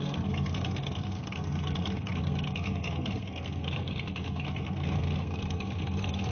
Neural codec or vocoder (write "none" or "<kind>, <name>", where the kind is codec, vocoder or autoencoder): codec, SNAC